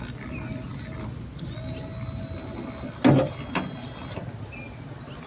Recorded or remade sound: recorded